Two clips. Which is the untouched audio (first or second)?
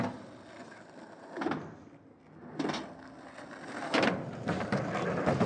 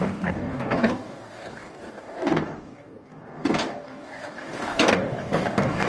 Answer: first